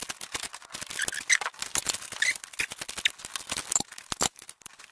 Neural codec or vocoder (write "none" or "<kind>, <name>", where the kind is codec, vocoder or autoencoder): none